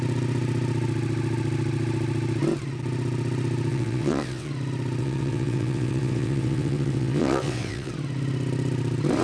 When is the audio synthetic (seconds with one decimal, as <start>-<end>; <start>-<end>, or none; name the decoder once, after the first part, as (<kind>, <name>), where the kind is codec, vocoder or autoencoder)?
3.7-4.5 (vocoder, WaveNeXt); 5.0-7.9